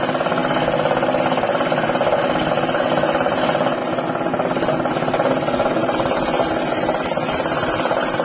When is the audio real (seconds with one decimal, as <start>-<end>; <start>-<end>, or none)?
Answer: 0.0-8.2